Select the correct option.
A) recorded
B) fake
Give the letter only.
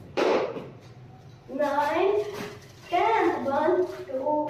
A